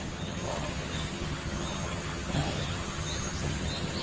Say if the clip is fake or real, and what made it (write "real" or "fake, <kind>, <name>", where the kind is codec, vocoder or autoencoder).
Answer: fake, vocoder, HiFi-GAN